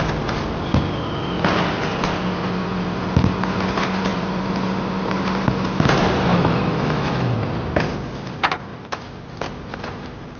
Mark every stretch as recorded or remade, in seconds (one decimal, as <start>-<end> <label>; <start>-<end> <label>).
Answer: 0.0-6.3 recorded; 6.3-7.3 remade; 7.3-10.4 recorded